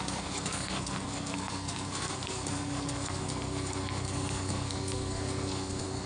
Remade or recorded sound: remade